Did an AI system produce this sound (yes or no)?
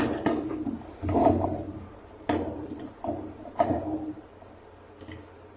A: yes